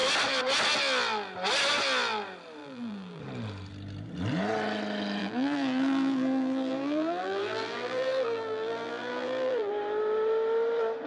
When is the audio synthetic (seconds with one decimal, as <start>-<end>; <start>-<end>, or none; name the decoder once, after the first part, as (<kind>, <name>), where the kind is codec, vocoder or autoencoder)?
2.6-3.2 (vocoder, BigVGAN v2); 5.2-9.7